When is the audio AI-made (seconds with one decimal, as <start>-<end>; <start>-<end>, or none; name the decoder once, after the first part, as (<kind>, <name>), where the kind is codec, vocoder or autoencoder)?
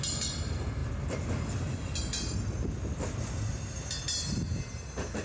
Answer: none